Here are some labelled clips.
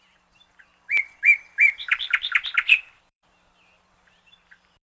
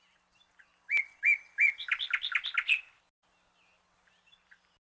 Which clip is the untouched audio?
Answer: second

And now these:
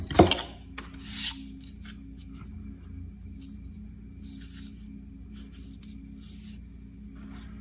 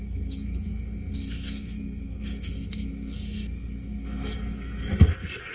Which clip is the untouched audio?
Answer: first